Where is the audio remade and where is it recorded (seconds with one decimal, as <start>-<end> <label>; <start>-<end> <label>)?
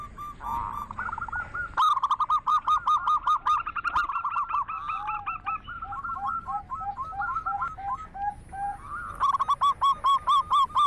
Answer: 0.0-2.5 recorded; 2.5-3.8 remade; 3.8-10.9 recorded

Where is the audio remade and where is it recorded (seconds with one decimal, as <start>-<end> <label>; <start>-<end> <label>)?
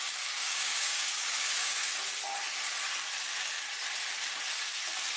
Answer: 0.0-1.9 remade; 1.9-5.2 recorded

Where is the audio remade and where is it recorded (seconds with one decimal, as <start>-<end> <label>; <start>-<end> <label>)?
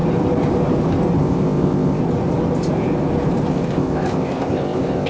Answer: 0.0-1.2 recorded; 1.2-2.0 remade; 2.0-3.5 recorded; 3.5-5.1 remade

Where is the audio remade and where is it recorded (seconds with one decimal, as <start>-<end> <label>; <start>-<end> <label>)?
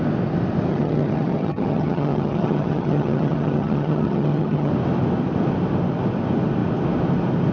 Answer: 0.0-0.7 recorded; 0.7-4.7 remade; 4.7-7.5 recorded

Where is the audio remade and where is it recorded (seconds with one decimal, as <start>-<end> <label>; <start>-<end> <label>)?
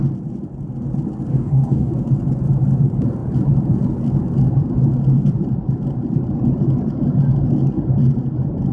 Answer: 0.0-1.3 recorded; 1.3-1.9 remade; 1.9-8.7 recorded